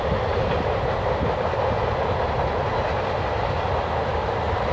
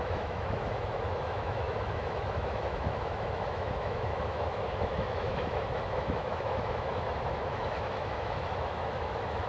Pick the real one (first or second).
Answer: first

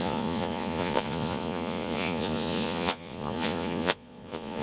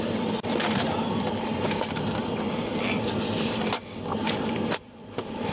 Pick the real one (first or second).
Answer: second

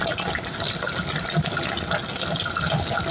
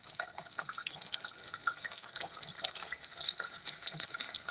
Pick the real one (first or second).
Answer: first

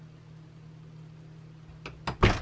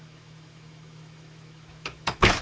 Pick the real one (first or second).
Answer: first